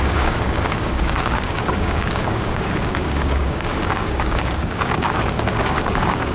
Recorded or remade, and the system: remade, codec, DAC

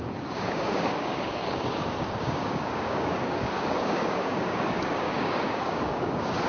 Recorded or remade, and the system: remade, codec, DAC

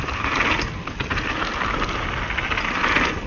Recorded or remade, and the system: recorded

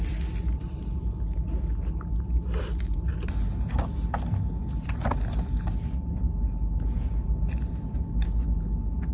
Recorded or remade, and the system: recorded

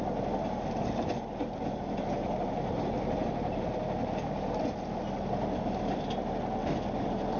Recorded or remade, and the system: recorded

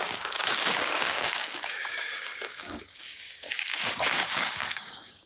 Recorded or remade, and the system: remade, codec, DAC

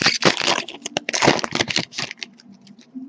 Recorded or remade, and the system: recorded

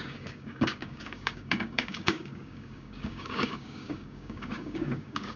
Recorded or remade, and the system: remade, codec, DAC